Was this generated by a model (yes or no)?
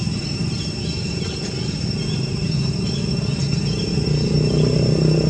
no